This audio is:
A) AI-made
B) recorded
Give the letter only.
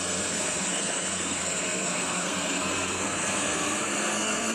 A